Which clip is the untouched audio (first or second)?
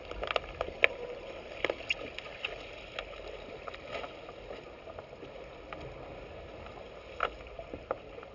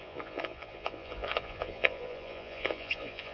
first